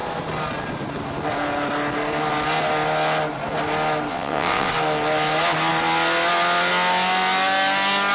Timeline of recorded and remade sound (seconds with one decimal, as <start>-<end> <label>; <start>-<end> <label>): 0.0-4.1 recorded; 4.1-4.7 remade; 4.7-8.1 recorded